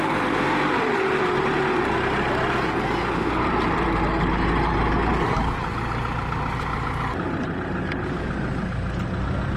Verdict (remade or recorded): recorded